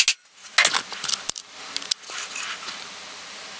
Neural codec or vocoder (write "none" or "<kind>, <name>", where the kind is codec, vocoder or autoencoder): none